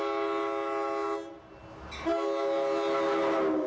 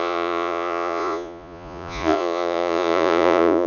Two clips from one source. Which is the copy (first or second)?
second